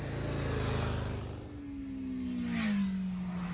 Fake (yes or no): no